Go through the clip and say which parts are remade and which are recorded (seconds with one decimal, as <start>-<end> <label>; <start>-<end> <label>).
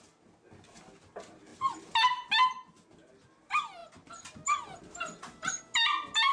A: 0.0-6.3 recorded